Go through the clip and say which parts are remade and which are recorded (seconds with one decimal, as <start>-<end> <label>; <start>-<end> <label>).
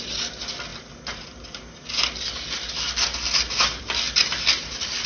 0.0-5.1 recorded